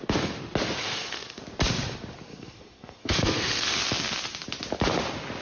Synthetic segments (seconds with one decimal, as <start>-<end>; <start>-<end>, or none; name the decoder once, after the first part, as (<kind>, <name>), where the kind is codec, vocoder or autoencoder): 0.8-1.4 (codec, SNAC); 2.3-3.8